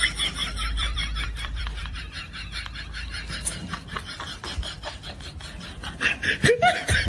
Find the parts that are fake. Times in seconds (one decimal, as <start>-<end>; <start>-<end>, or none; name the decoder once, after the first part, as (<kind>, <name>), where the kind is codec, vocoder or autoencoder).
0.4-2.0 (vocoder, BigVGAN v2)